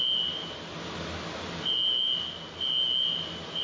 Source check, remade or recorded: recorded